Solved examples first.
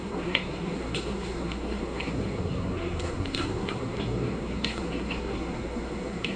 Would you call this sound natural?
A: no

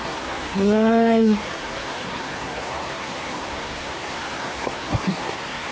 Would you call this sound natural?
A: no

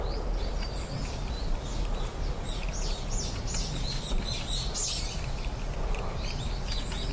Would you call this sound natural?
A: yes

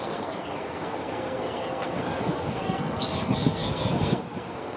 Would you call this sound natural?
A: no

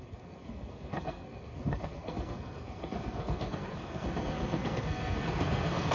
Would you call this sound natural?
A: no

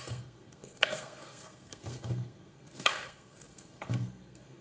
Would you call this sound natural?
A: no